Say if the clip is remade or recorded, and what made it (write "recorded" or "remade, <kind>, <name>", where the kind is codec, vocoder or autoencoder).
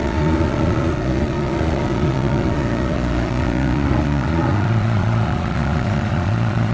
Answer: remade, vocoder, Vocos